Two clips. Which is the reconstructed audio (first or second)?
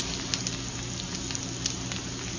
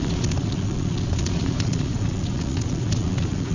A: second